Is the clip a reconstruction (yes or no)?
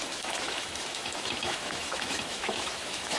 yes